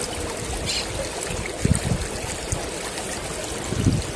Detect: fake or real real